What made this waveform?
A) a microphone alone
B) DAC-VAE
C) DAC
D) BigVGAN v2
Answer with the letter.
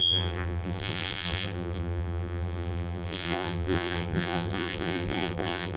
D